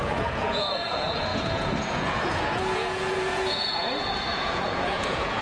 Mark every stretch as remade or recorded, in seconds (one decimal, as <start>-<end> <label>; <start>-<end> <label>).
0.0-5.4 remade